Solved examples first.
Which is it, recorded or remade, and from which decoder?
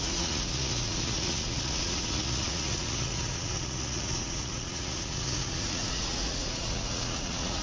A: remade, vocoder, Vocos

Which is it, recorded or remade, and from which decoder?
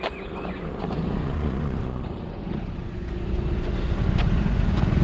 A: remade, vocoder, Vocos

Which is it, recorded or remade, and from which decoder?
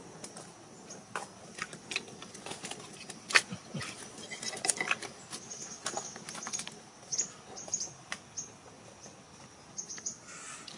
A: recorded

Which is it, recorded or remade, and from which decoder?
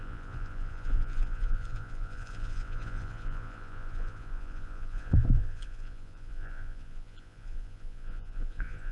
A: remade, vocoder, Vocos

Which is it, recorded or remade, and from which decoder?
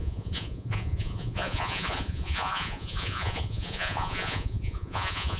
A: remade, vocoder, Vocos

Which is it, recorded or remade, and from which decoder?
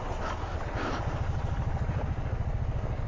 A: recorded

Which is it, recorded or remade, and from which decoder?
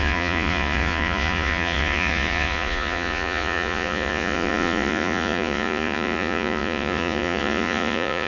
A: remade, vocoder, Vocos